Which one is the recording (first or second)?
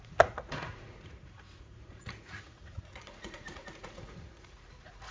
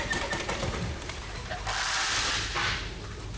second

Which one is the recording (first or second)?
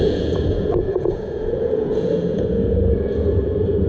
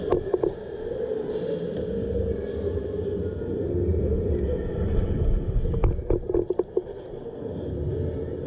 second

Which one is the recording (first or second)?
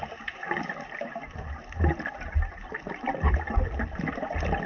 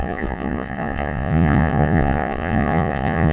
first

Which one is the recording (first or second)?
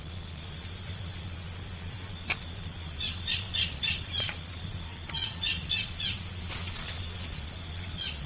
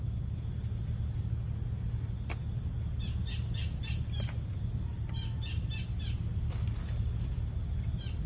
second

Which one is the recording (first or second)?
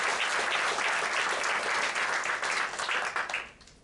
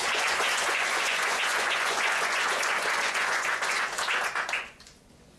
first